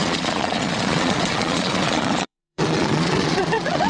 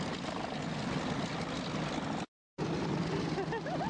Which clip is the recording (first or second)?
second